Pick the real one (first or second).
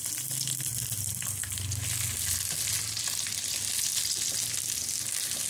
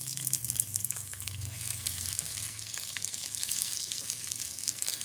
first